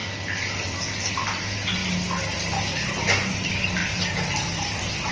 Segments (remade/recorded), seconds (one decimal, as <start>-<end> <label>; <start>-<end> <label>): 0.0-5.1 recorded